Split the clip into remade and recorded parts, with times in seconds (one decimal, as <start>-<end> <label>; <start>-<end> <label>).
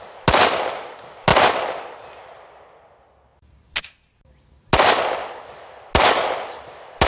0.0-7.1 recorded